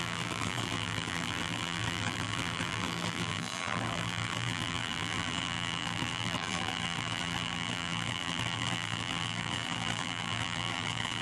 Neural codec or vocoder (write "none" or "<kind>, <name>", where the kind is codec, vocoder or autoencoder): vocoder, BigVGAN v2